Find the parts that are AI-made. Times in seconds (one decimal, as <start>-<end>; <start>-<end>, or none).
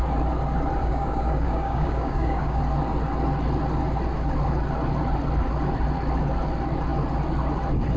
0.8-2.6